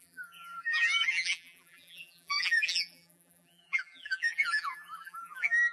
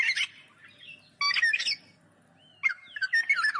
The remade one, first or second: first